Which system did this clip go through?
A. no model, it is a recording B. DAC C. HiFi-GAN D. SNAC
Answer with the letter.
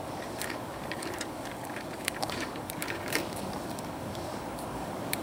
B